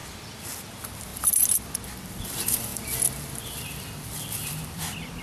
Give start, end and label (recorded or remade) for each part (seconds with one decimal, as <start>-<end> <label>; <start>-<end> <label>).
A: 0.0-0.7 recorded; 0.7-5.2 remade